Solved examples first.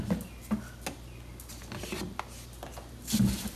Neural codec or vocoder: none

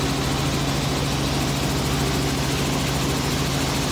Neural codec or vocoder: none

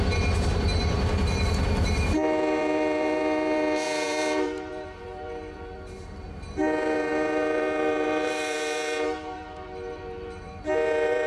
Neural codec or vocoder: vocoder, BigVGAN v2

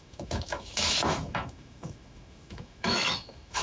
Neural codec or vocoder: autoencoder, DAC-VAE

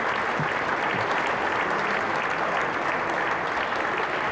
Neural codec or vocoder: none